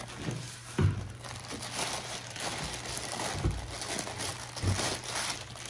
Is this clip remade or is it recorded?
recorded